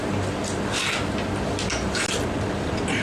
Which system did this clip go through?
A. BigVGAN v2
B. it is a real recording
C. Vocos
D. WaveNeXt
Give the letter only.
B